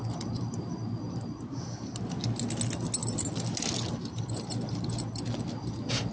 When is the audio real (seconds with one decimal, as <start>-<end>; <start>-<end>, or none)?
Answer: 0.0-6.1